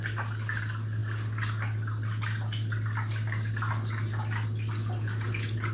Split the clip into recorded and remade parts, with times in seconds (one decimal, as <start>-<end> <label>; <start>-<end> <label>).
0.0-5.7 recorded